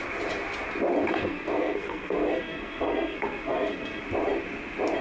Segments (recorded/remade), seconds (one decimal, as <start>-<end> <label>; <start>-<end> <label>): 0.0-1.0 recorded; 1.0-4.0 remade; 4.0-5.0 recorded